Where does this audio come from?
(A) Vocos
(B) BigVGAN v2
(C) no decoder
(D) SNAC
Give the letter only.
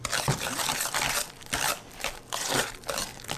B